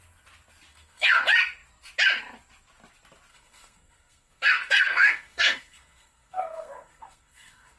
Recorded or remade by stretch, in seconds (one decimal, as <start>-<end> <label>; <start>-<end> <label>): 0.0-0.7 recorded; 0.7-1.2 remade; 1.2-3.3 recorded; 3.3-7.8 remade